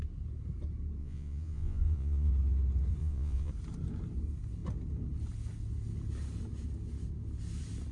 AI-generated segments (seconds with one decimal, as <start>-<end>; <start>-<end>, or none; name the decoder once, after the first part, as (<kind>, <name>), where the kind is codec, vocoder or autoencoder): 1.0-2.3 (vocoder, Vocos); 3.0-3.5